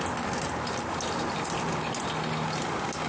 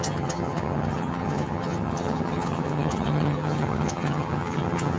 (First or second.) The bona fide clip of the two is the first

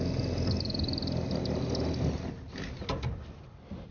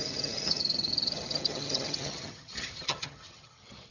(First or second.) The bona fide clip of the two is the first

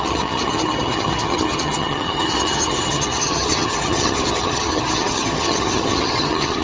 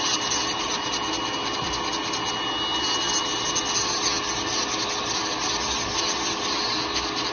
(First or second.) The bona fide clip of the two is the second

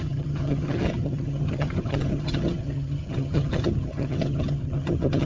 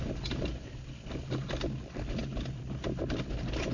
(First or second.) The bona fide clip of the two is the second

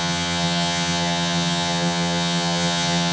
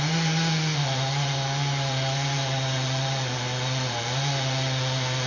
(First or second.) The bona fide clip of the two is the second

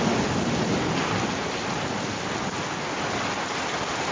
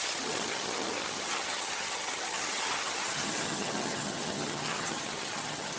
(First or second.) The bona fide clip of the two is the first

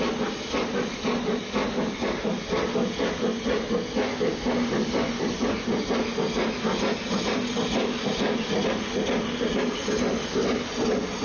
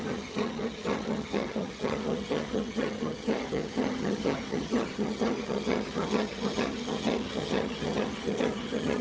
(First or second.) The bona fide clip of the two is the first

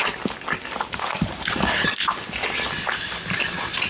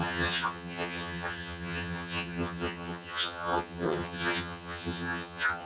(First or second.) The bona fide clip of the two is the first